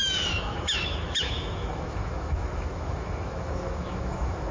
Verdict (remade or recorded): remade